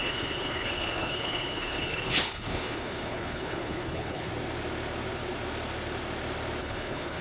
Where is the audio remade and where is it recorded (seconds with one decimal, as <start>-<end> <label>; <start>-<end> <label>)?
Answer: 0.0-4.3 remade; 4.3-6.6 recorded; 6.6-7.2 remade